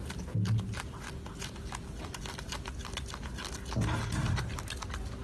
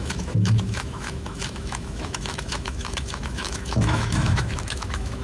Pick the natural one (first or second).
first